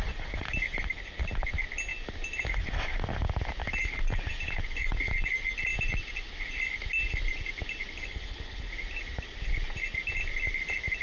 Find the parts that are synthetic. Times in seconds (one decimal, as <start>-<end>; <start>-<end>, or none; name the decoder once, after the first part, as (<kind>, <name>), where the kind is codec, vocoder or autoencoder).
8.0-8.7 (codec, HILCodec)